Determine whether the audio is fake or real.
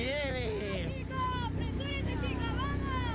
real